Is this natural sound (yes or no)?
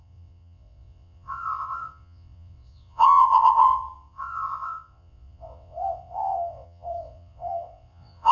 no